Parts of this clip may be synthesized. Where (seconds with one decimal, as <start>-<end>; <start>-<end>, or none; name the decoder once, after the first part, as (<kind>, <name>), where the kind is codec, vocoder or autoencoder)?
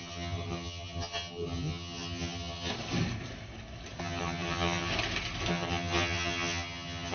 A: 0.0-2.7 (vocoder, HiFi-GAN); 4.0-4.9; 5.5-7.1